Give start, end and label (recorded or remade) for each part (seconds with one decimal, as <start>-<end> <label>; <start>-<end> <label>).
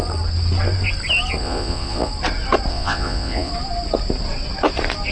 0.0-1.4 recorded; 1.4-2.1 remade; 2.1-2.7 recorded; 2.7-3.5 remade; 3.5-5.1 recorded